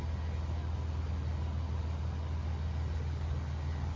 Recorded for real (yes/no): yes